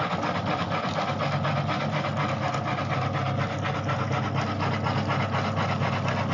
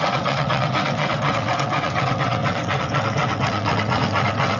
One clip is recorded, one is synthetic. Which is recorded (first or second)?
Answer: first